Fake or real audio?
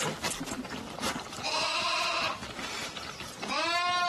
real